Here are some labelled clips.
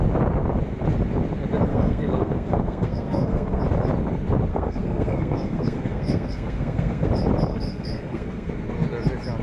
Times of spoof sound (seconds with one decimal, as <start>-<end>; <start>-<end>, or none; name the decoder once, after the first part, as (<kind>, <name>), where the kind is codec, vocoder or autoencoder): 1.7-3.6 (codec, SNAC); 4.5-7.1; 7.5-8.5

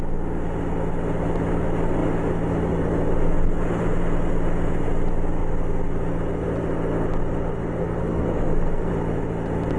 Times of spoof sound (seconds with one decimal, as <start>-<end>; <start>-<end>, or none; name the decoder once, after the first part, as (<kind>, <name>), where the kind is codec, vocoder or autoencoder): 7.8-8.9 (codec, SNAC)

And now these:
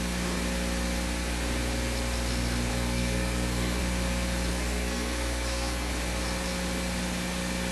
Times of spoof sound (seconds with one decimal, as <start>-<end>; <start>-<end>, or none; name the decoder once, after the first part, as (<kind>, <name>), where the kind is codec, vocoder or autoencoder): 2.7-3.8 (codec, SNAC); 4.5-5.9

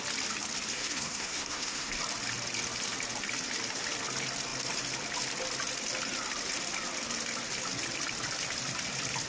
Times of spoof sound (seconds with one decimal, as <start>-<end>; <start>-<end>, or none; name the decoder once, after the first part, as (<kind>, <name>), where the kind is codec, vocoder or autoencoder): 0.7-1.9 (codec, SNAC)